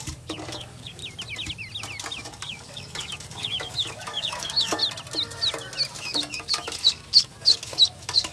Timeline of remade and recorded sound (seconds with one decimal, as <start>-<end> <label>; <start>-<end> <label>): 0.0-1.0 remade; 1.0-2.2 recorded; 2.2-4.8 remade; 4.8-6.0 recorded; 6.0-8.3 remade